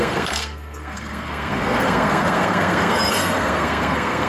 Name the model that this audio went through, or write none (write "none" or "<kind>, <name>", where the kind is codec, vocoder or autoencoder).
codec, SNAC